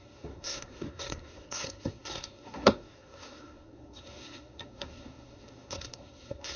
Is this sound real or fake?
fake